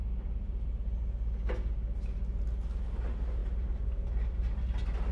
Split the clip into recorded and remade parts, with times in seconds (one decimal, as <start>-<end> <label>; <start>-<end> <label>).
0.0-3.4 recorded; 3.4-5.1 remade